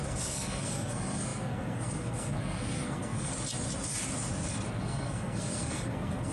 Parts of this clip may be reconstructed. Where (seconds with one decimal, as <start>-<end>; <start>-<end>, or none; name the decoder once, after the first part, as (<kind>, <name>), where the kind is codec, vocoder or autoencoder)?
0.0-3.3 (codec, SNAC); 4.8-6.3